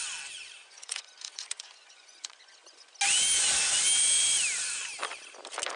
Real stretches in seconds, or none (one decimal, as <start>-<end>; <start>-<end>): 0.0-0.6; 2.9-5.8

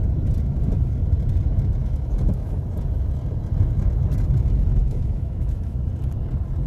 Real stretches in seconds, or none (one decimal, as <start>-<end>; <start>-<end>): 0.0-1.8; 2.6-4.8; 5.9-6.7

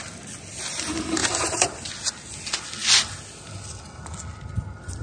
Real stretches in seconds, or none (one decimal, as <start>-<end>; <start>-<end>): 0.0-1.2; 1.9-5.0

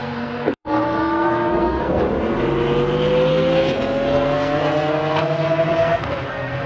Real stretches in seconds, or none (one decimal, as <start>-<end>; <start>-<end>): 2.0-3.3

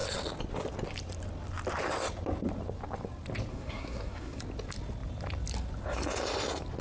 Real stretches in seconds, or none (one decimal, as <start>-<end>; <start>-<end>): 0.0-3.5; 4.4-6.8